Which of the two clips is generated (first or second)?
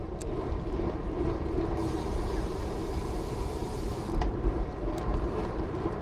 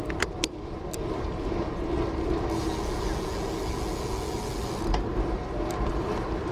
first